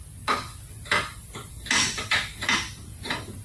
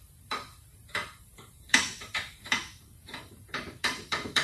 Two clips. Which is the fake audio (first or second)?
second